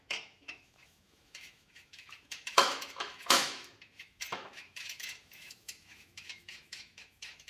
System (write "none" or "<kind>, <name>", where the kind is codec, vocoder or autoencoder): autoencoder, DAC-VAE